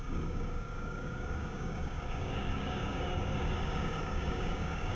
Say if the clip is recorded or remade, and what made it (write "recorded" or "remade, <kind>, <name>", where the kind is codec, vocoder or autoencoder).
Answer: remade, codec, DAC